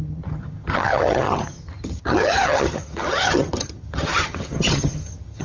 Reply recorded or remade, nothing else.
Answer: remade